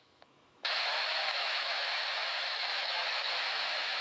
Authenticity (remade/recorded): remade